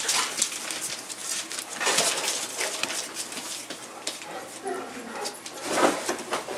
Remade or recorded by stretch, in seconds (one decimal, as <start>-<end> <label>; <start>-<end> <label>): 0.0-6.6 recorded